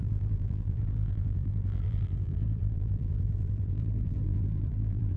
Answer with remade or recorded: remade